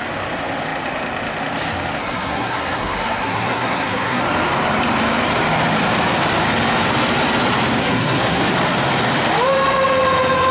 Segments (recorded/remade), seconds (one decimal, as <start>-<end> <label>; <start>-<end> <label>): 0.0-2.0 recorded; 2.0-4.2 remade; 4.2-7.8 recorded; 7.8-8.4 remade; 8.4-10.5 recorded

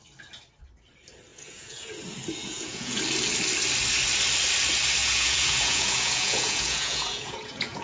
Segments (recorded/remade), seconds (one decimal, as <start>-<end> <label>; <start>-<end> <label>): 0.0-1.3 recorded; 1.3-1.9 remade; 1.9-2.4 recorded; 2.4-3.0 remade; 3.0-5.0 recorded; 5.0-7.8 remade

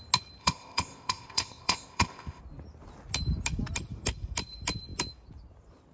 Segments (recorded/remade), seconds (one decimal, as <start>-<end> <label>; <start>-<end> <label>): 0.0-0.4 recorded; 0.4-2.4 remade; 2.4-5.9 recorded